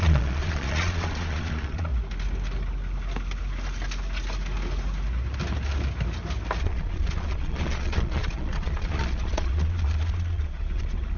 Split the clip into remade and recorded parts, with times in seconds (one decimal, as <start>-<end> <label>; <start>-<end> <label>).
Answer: 0.0-1.9 remade; 1.9-6.6 recorded; 6.6-11.2 remade

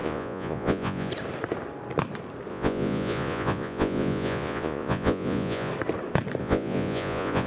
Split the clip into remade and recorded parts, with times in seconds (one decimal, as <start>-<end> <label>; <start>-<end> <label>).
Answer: 0.0-1.1 remade; 1.1-2.5 recorded; 2.5-5.7 remade; 5.7-6.4 recorded; 6.4-7.5 remade

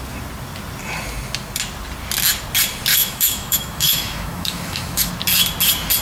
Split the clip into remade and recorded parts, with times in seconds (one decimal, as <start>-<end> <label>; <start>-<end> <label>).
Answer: 0.0-2.9 recorded; 2.9-5.1 remade; 5.1-6.0 recorded

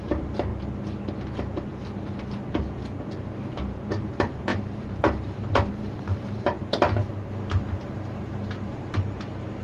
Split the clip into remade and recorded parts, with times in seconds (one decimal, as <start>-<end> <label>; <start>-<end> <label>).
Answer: 0.0-0.5 remade; 0.5-3.4 recorded; 3.4-7.0 remade; 7.0-7.8 recorded; 7.8-9.6 remade

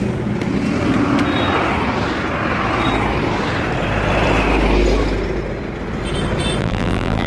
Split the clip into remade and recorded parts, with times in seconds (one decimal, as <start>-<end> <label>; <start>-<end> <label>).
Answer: 0.0-6.6 recorded; 6.6-7.3 remade

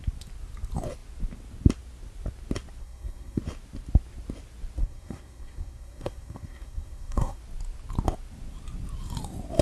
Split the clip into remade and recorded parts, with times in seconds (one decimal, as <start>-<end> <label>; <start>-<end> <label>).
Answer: 0.0-2.8 recorded; 2.8-3.4 remade; 3.4-4.8 recorded; 4.8-7.4 remade; 7.4-9.6 recorded

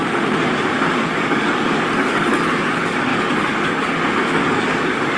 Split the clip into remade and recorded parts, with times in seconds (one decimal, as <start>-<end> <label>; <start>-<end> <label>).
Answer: 0.0-0.9 recorded; 0.9-5.2 remade